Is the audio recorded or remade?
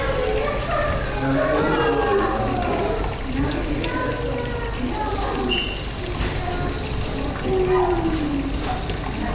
recorded